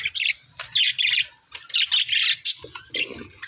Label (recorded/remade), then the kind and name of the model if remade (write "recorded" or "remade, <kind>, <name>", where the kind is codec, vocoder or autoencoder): recorded